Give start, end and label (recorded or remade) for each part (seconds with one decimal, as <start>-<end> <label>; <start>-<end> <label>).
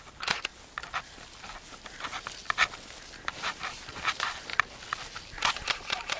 0.0-0.5 remade; 0.5-3.3 recorded; 3.3-4.5 remade; 4.5-5.5 recorded; 5.5-6.2 remade